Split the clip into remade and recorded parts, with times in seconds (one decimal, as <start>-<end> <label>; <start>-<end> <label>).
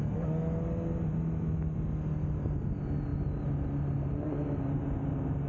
0.0-5.5 recorded